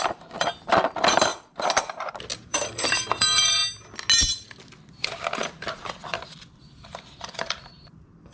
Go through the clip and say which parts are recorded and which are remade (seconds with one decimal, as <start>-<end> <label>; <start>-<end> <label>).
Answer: 0.0-1.3 remade; 1.3-2.5 recorded; 2.5-3.6 remade; 3.6-4.9 recorded; 4.9-8.3 remade